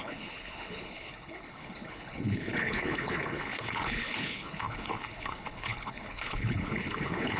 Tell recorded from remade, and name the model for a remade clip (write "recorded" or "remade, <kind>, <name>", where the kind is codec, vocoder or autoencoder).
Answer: remade, codec, HILCodec